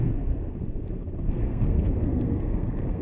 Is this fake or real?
fake